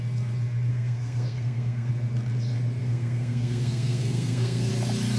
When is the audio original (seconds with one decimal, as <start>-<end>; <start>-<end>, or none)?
0.0-0.7; 1.9-2.8; 4.7-5.2